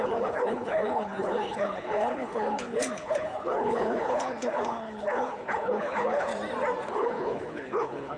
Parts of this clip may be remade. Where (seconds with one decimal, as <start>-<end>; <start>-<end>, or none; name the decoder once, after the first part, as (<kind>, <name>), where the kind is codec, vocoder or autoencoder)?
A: 0.0-6.3 (codec, HILCodec); 6.9-8.2